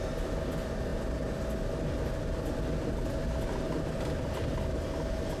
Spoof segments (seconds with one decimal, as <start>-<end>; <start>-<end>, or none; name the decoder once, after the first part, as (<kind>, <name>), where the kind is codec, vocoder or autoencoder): none